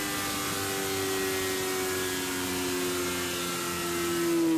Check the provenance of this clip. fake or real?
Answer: real